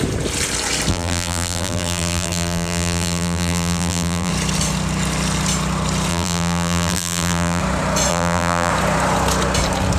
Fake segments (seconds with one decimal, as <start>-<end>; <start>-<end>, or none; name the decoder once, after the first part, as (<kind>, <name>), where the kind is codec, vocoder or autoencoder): 0.9-4.3 (vocoder, BigVGAN v2); 6.1-7.6; 8.1-8.7